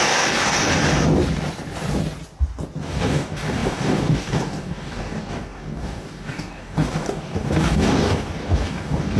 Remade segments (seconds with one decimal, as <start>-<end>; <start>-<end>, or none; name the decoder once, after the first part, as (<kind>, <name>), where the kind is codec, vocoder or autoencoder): 0.0-0.7 (codec, DAC); 2.8-9.2